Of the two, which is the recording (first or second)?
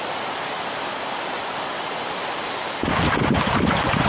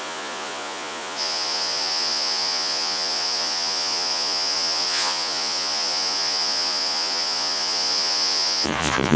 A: first